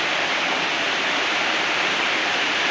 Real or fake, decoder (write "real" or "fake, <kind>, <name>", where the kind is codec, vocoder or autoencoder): real